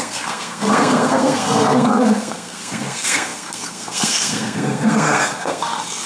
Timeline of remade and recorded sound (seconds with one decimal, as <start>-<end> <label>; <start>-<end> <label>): 0.0-6.1 remade